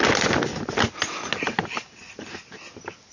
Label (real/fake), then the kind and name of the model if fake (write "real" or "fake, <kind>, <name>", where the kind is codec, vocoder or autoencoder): real